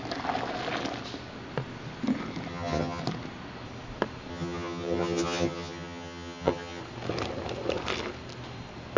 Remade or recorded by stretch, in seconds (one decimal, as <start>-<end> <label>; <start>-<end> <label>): 0.0-2.5 recorded; 2.5-3.0 remade; 3.0-4.3 recorded; 4.3-6.8 remade; 6.8-9.0 recorded